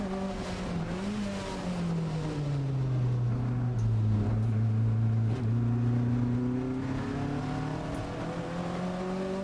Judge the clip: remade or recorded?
recorded